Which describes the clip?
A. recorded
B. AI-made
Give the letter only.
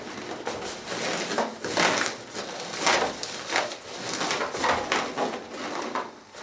A